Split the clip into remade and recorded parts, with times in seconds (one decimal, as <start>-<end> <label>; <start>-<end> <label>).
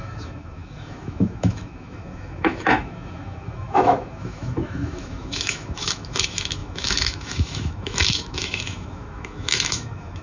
0.0-10.2 remade